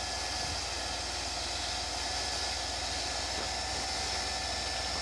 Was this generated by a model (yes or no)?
no